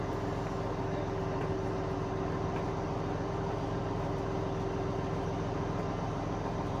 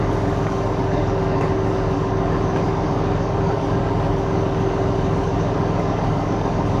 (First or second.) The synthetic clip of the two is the second